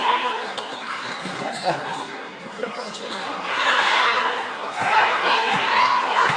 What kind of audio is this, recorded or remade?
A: remade